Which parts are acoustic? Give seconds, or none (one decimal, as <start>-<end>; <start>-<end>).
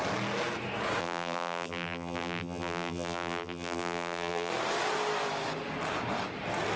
0.0-1.0; 4.5-6.8